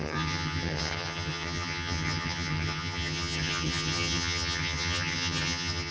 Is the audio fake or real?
fake